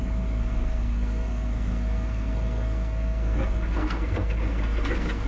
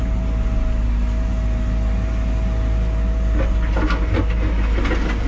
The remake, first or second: first